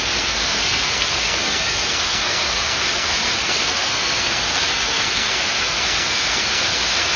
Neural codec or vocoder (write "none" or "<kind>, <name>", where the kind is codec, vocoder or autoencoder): codec, SNAC